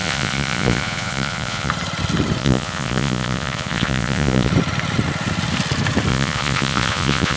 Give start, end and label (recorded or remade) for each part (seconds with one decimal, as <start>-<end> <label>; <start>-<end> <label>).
0.0-1.7 remade; 1.7-2.4 recorded; 2.4-4.5 remade; 4.5-6.1 recorded; 6.1-7.4 remade